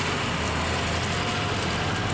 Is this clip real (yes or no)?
yes